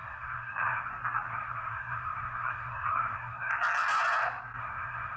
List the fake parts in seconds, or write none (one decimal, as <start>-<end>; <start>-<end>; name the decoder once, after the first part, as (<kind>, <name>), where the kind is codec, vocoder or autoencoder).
0.0-0.9 (codec, SNAC); 1.3-3.5; 4.6-5.2